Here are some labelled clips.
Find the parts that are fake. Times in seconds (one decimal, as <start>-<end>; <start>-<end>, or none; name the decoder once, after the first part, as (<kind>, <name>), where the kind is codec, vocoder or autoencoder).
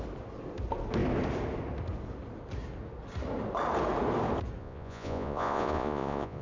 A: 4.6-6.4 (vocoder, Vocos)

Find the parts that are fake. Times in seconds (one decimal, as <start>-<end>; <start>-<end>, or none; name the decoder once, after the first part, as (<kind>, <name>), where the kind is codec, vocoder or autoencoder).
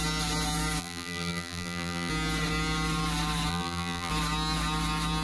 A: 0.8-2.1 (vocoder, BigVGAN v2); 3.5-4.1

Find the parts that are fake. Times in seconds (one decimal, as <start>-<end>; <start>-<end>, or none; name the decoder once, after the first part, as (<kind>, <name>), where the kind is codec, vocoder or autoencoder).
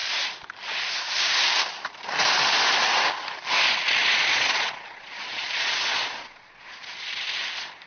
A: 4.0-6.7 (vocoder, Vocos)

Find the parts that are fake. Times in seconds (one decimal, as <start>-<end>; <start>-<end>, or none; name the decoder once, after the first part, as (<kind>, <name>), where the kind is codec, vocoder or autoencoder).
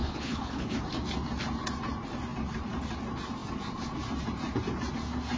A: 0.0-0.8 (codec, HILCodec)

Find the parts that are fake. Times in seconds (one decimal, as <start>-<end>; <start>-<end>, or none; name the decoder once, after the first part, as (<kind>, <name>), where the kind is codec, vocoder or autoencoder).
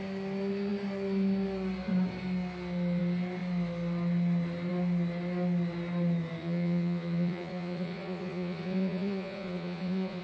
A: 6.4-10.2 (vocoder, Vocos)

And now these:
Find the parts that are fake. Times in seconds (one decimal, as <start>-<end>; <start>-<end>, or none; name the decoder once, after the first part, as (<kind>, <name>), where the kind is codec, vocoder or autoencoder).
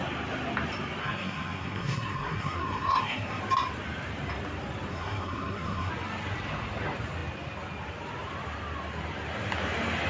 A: 1.0-3.4 (codec, SNAC); 4.9-5.9